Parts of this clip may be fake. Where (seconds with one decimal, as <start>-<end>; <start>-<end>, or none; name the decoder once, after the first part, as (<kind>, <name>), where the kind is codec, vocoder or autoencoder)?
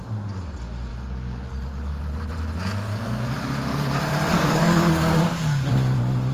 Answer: 0.9-2.0 (codec, DAC); 2.9-3.5; 4.3-5.7